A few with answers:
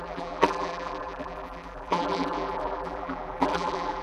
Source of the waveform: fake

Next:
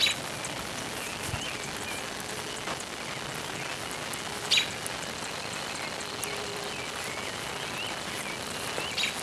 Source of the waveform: real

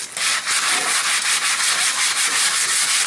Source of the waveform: real